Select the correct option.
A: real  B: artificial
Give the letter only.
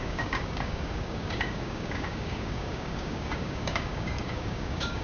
B